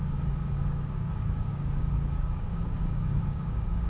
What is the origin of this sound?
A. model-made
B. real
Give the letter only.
A